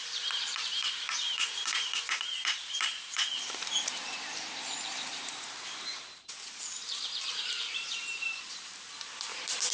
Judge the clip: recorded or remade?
remade